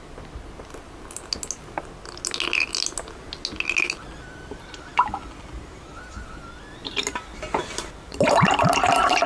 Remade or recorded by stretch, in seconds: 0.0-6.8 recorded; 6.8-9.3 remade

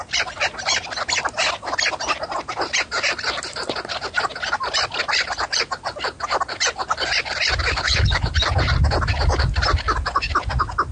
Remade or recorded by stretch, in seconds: 0.0-7.7 recorded; 7.7-8.3 remade; 8.3-10.9 recorded

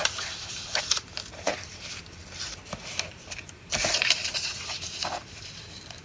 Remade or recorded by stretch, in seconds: 0.0-2.2 remade; 2.2-3.1 recorded; 3.1-6.0 remade

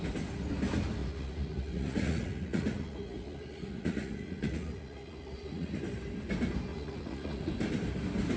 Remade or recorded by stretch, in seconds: 0.0-1.0 recorded; 1.0-5.8 remade; 5.8-6.7 recorded; 6.7-7.5 remade; 7.5-8.4 recorded